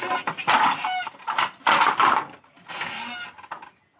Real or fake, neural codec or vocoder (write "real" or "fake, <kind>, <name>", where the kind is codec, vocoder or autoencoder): real